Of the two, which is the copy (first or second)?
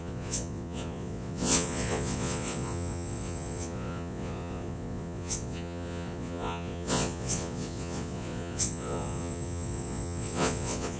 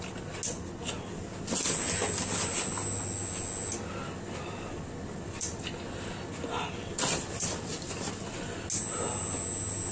first